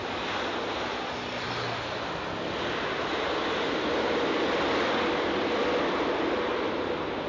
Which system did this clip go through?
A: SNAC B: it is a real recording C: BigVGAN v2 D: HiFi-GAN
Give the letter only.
B